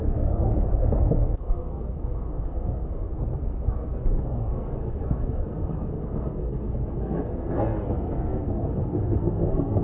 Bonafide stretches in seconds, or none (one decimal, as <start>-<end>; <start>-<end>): none